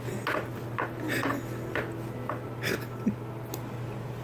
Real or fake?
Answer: real